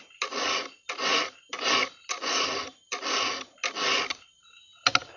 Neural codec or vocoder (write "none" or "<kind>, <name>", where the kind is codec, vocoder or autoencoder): none